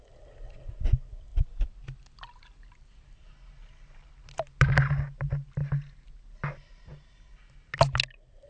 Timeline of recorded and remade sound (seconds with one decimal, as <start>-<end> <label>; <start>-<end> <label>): 0.0-8.5 recorded